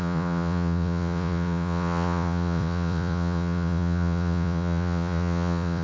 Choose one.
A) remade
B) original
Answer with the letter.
A